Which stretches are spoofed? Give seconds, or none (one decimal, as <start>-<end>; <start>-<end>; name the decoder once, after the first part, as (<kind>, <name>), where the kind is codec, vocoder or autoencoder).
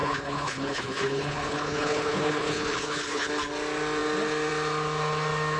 0.0-3.3 (codec, HILCodec)